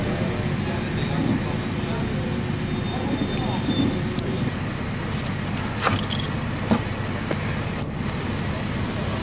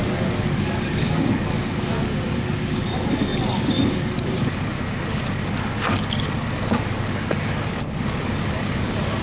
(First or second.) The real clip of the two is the first